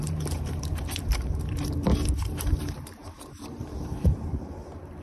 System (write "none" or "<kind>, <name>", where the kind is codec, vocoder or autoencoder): vocoder, BigVGAN v2